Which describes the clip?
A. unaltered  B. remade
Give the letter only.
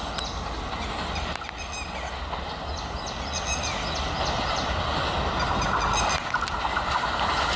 A